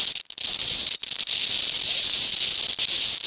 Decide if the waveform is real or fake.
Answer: real